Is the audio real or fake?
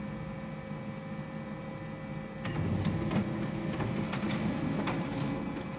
real